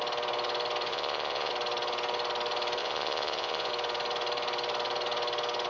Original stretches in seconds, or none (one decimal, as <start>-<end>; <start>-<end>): 0.0-0.9; 1.5-2.8; 3.7-5.7